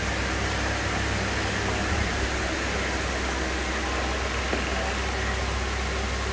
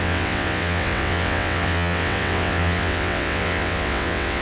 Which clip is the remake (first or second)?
second